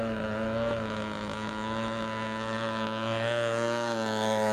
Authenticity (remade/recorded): remade